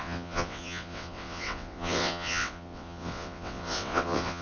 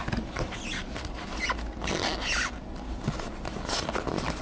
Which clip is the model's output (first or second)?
first